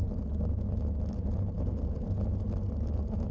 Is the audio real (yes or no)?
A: yes